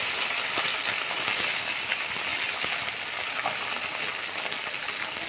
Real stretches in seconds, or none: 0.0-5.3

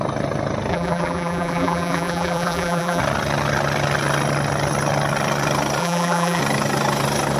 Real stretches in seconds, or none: 0.0-0.7; 3.0-5.8; 6.4-7.4

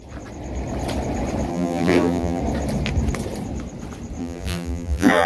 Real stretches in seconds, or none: 0.0-1.5; 2.4-4.2

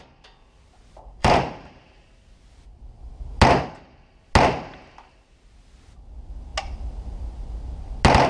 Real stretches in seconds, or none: 0.0-1.2; 2.2-8.3

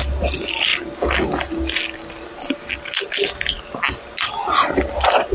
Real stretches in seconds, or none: 0.0-5.3

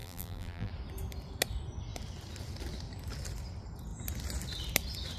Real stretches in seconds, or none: 0.7-5.2

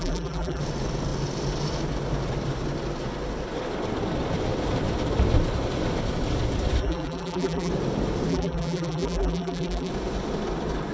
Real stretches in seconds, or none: 0.6-6.8; 7.7-8.3; 9.9-10.9